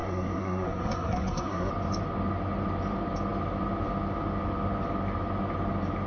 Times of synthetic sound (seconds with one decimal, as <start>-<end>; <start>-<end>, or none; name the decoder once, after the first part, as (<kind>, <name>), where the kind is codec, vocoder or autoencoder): 0.0-1.7 (codec, SNAC)

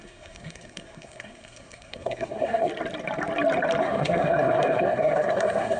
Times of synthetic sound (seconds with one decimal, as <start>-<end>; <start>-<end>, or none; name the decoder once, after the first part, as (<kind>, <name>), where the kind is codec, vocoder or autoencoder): 0.0-2.7 (codec, SNAC); 3.8-5.8

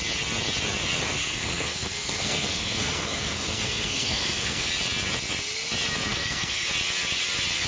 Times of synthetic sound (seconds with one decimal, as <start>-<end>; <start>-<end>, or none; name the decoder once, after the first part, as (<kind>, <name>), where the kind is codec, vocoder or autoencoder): 1.2-4.7 (codec, SNAC); 6.1-6.7

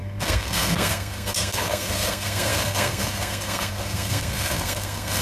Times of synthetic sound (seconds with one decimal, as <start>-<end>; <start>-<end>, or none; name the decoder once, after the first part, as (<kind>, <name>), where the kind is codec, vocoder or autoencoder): 0.0-5.2 (codec, SNAC)

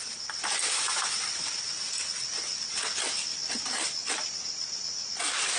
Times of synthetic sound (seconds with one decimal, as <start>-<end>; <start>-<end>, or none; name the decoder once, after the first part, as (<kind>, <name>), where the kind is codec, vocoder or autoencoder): none

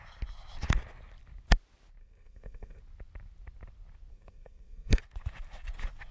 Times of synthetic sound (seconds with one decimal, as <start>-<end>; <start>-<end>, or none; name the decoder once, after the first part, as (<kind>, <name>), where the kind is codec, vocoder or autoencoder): 2.0-2.8 (codec, SNAC); 4.1-5.0